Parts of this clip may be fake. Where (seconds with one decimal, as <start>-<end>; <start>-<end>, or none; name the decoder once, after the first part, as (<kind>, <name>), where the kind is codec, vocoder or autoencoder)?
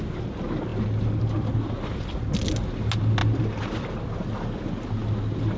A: none